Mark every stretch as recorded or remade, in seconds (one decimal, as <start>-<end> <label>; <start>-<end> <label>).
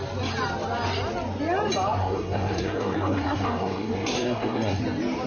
0.0-2.0 recorded; 2.0-4.8 remade; 4.8-5.3 recorded